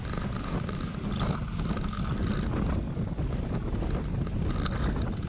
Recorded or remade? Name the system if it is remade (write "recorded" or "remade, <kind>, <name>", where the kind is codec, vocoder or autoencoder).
recorded